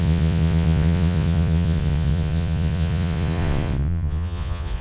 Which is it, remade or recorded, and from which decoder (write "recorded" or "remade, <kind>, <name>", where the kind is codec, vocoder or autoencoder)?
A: remade, vocoder, Vocos